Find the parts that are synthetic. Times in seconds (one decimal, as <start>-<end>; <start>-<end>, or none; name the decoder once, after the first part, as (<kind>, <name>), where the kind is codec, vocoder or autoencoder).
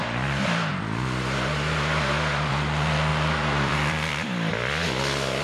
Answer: 3.1-4.5 (vocoder, BigVGAN v2)